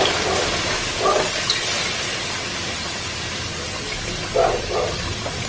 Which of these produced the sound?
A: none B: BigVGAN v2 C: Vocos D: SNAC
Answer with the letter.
A